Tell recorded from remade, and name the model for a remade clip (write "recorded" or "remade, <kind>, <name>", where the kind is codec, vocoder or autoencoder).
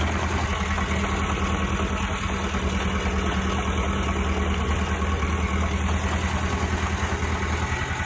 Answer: recorded